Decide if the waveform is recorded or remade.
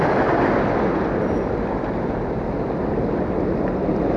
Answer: recorded